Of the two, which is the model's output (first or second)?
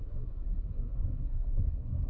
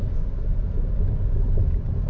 first